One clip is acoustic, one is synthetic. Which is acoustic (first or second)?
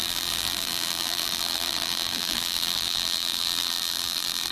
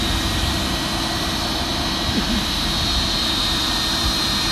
second